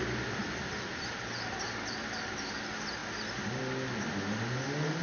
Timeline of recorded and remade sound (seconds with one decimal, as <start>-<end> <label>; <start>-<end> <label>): 0.0-5.0 recorded